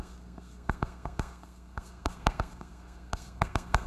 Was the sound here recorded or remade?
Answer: remade